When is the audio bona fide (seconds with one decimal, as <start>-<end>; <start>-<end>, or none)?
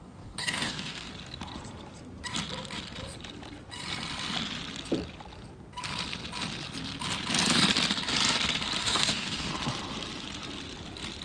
1.1-8.8; 9.5-11.2